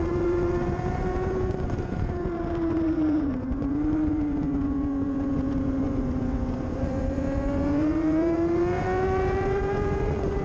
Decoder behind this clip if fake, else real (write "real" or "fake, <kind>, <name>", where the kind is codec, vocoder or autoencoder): fake, vocoder, Vocos